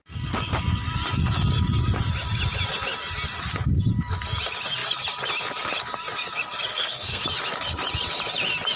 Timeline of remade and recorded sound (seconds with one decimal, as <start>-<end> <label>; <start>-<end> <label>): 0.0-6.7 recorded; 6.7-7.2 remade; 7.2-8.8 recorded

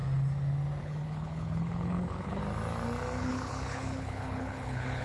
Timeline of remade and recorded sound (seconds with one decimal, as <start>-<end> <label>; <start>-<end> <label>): 0.0-0.8 recorded; 0.8-2.4 remade; 2.4-3.2 recorded; 3.2-5.0 remade

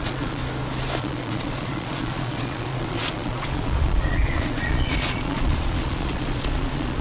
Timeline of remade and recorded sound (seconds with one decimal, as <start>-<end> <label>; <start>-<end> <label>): 0.0-0.4 remade; 0.4-1.0 recorded; 1.0-7.0 remade